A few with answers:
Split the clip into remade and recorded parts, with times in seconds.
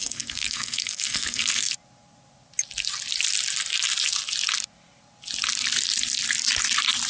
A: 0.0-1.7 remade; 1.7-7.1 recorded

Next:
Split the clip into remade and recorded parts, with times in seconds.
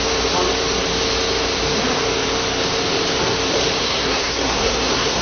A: 0.0-3.8 recorded; 3.8-5.2 remade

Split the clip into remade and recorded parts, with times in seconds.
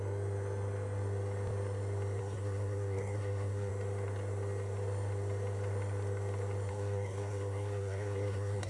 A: 0.0-2.2 recorded; 2.2-3.7 remade; 3.7-6.7 recorded; 6.7-8.7 remade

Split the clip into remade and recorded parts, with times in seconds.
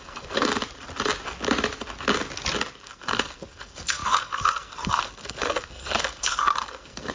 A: 0.0-0.5 remade; 0.5-2.8 recorded; 2.8-7.1 remade